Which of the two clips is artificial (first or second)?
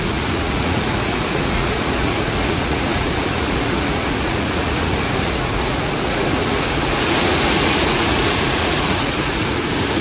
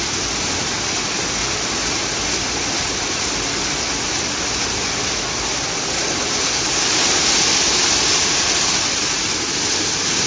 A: first